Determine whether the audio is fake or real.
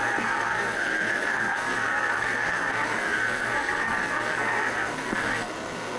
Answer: fake